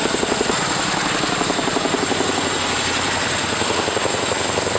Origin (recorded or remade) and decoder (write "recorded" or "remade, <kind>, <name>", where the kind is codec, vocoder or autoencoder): recorded